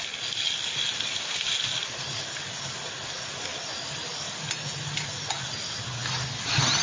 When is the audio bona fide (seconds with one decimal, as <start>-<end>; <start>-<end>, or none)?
0.0-6.8